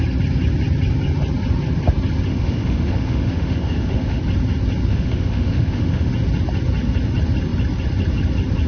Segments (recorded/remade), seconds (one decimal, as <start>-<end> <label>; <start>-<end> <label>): 0.0-2.3 recorded; 2.3-4.2 remade; 4.2-4.9 recorded; 4.9-6.1 remade; 6.1-8.7 recorded